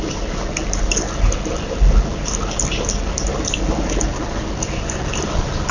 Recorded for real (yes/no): yes